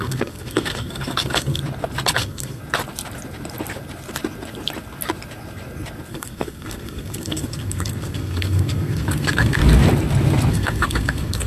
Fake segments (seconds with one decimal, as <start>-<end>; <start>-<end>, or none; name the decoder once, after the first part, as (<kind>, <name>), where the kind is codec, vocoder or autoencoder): 0.0-1.6 (codec, SNAC); 2.2-2.6; 6.1-9.6; 10.5-11.5